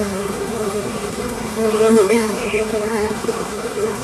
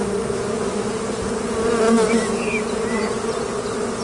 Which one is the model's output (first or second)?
first